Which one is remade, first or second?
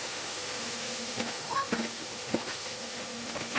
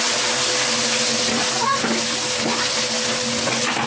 first